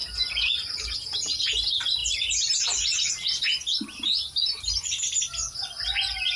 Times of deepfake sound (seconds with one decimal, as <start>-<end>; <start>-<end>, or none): none